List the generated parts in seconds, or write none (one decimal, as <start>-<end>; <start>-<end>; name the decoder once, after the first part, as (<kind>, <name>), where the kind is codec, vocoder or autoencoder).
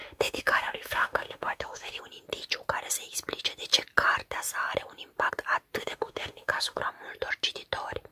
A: 0.0-2.0 (autoencoder, DAC-VAE); 5.8-6.8